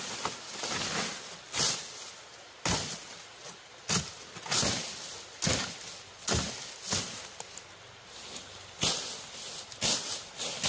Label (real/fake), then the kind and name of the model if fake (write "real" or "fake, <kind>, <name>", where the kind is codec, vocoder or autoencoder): real